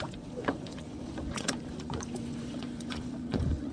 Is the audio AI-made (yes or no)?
yes